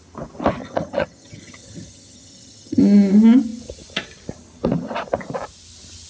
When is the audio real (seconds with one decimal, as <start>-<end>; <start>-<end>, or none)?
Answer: 0.0-0.6; 2.8-6.1